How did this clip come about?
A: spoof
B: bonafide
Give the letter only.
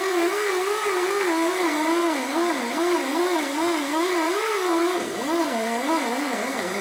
A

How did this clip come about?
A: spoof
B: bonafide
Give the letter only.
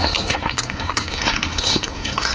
A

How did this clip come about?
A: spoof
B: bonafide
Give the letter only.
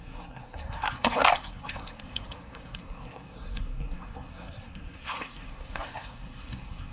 A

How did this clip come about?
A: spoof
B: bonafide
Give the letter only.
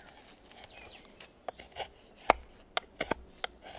B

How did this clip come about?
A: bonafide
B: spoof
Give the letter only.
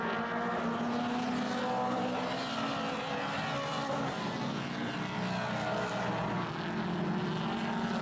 A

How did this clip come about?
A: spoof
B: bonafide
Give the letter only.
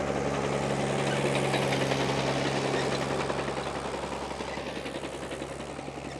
B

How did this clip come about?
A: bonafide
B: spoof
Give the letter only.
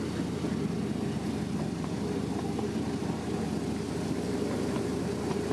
A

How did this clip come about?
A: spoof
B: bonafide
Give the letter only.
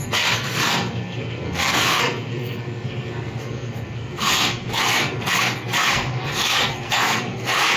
A